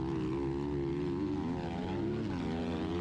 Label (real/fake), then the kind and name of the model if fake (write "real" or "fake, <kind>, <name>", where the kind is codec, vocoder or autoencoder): real